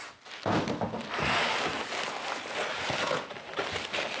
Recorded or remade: recorded